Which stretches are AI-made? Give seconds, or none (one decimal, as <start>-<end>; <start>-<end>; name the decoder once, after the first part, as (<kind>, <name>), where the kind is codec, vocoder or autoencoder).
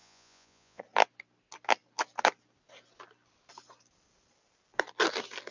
0.0-0.8 (vocoder, Vocos)